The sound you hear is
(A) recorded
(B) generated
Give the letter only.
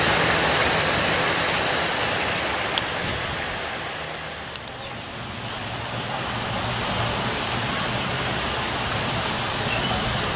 A